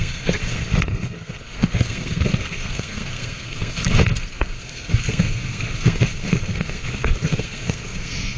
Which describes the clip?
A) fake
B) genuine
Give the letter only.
A